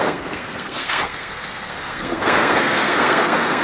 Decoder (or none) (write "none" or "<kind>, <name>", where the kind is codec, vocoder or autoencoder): codec, SNAC